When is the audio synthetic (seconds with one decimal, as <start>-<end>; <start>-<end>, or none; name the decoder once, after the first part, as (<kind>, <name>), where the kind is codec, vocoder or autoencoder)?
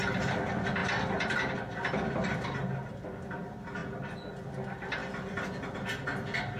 none